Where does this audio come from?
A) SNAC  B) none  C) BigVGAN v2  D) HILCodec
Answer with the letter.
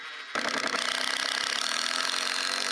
B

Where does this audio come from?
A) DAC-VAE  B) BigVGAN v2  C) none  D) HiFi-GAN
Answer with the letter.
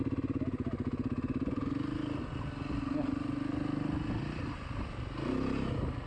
C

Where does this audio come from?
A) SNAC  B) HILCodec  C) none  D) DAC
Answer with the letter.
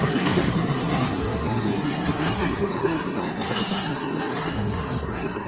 A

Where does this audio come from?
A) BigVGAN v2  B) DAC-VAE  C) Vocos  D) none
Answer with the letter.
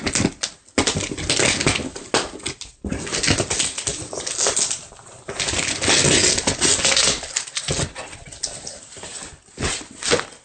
D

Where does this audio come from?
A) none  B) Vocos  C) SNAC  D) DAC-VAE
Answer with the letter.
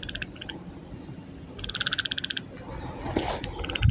A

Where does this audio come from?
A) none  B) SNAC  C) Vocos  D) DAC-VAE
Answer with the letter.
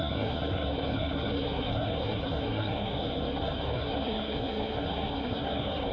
B